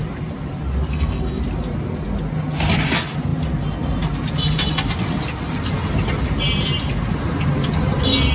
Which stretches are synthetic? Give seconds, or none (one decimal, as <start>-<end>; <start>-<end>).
0.9-1.4